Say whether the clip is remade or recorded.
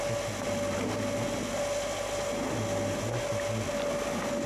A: recorded